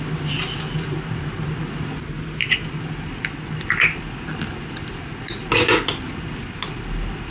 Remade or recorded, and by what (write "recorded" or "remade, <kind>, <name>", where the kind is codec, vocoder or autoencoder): recorded